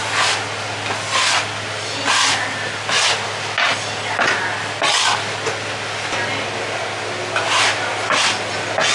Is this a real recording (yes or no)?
yes